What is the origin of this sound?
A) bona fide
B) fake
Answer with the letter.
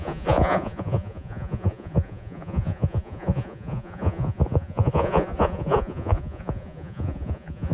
B